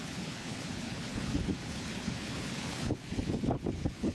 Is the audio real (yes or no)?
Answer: no